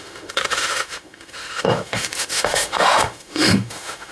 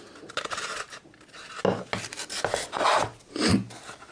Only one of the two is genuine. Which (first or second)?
second